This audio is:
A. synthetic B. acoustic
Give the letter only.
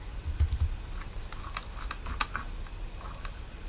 B